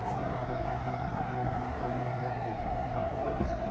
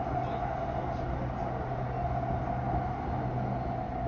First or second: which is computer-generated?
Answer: first